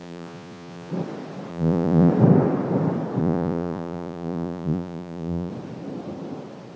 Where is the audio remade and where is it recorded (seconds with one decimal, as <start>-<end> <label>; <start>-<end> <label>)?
0.0-0.9 remade; 0.9-1.5 recorded; 1.5-2.1 remade; 2.1-3.2 recorded; 3.2-5.5 remade; 5.5-6.8 recorded